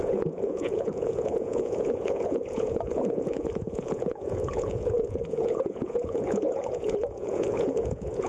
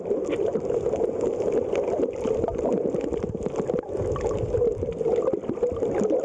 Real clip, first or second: second